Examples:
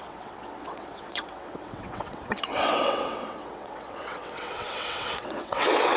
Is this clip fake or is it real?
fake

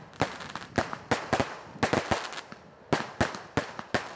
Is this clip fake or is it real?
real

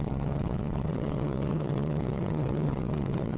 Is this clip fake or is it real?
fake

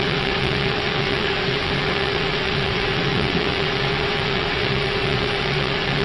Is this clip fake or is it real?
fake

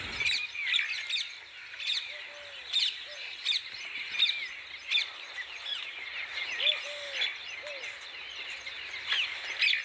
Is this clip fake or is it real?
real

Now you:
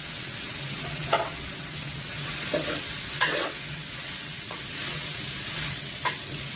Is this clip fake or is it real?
fake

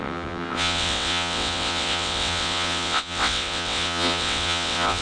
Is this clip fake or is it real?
fake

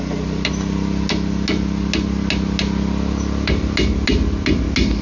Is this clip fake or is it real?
real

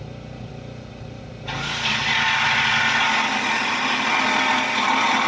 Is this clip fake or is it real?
real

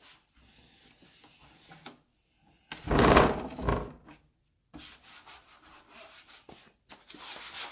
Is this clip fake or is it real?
real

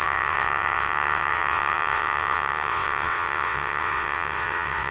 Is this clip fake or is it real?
fake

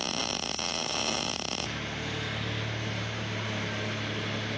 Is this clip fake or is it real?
real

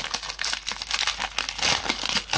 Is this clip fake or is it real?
real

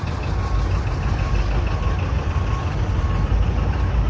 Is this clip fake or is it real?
real